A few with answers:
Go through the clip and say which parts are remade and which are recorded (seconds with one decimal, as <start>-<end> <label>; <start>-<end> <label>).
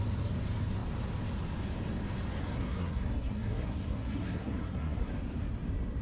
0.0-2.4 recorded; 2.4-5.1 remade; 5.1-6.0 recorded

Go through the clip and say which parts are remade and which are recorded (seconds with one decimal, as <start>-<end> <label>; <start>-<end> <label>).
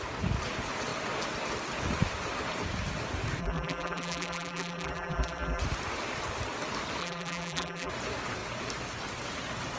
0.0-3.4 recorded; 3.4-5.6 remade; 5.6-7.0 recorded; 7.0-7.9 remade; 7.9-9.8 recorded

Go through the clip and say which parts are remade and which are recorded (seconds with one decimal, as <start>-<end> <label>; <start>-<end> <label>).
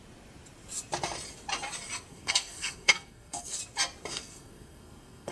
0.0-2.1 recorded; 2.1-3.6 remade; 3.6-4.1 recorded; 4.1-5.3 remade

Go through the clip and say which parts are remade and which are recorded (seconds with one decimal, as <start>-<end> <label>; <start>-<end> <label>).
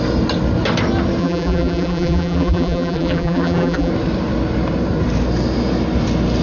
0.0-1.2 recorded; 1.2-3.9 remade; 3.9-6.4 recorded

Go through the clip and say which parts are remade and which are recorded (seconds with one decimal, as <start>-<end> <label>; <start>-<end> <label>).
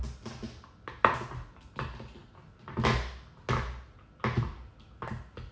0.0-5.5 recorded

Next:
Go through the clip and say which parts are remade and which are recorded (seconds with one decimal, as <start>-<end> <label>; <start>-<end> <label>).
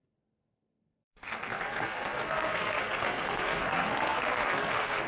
0.0-5.1 remade